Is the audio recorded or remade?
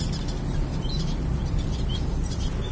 recorded